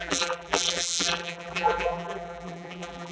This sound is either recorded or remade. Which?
remade